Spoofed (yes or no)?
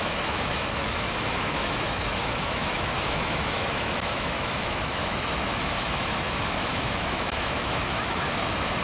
yes